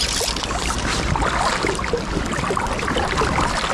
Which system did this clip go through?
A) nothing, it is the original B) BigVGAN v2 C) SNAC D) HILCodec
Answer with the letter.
A